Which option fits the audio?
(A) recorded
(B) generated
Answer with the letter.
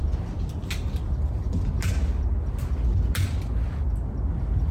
A